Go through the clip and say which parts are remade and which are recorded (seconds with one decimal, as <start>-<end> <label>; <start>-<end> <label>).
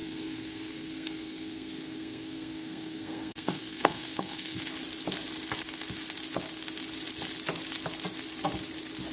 0.0-4.7 remade; 4.7-9.1 recorded